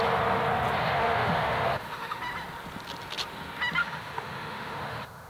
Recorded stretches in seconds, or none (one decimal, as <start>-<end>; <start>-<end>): 0.0-0.8; 2.2-3.8